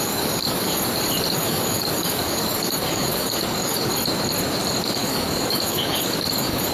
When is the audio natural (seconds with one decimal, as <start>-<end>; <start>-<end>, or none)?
0.7-1.3; 3.9-4.8